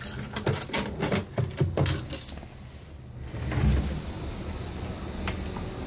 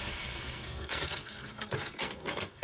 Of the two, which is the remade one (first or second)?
second